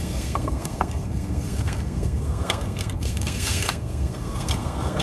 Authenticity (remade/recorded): remade